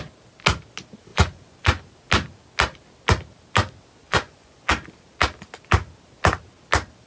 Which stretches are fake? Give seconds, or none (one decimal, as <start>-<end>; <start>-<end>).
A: 1.1-1.9; 4.0-4.7